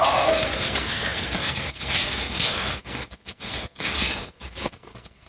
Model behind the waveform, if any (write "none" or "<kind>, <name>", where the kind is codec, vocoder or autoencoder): codec, SNAC